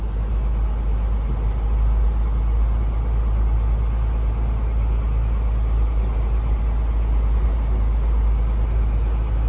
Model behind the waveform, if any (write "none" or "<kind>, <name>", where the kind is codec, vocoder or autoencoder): none